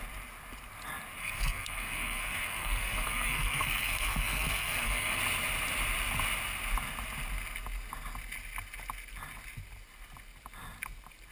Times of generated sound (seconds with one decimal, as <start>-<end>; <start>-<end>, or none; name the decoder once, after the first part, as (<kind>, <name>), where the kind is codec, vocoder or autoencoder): 1.2-5.2 (codec, SNAC)